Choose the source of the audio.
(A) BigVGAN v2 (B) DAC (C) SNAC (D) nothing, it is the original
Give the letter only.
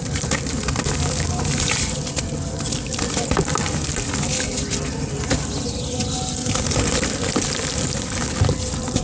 D